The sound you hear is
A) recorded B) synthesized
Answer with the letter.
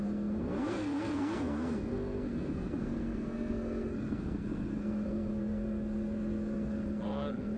B